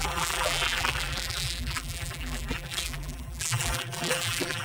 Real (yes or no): no